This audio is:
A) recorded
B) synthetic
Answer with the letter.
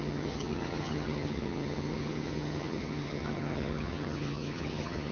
B